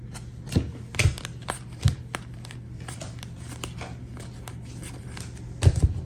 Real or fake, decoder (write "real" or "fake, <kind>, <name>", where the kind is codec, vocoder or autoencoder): real